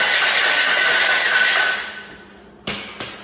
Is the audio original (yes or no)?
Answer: yes